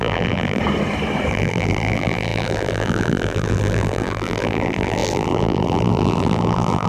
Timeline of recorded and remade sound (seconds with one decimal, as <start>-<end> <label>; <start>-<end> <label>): 0.0-0.6 remade; 0.6-1.3 recorded; 1.3-6.9 remade